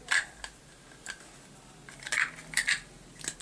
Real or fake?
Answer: real